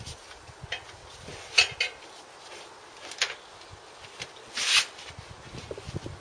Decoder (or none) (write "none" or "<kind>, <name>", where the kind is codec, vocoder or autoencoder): none